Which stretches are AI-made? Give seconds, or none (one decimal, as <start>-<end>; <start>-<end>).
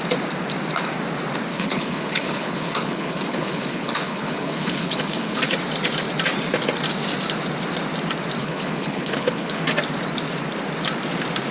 1.5-5.4; 8.4-9.6